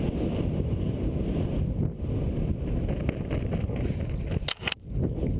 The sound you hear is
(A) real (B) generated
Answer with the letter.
A